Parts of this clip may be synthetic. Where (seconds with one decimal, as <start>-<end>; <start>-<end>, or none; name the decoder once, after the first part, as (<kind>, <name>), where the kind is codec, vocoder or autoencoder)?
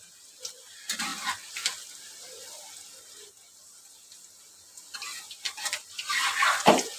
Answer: none